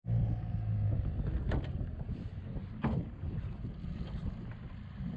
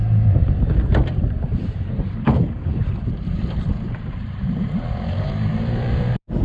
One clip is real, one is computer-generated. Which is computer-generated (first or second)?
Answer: second